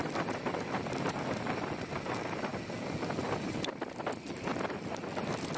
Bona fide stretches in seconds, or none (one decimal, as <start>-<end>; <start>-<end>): 0.0-5.6